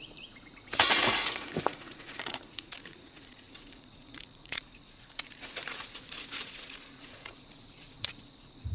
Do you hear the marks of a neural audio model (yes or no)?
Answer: yes